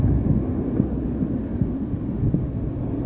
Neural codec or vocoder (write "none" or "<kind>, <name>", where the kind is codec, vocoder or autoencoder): none